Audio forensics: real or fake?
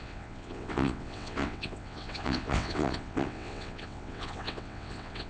fake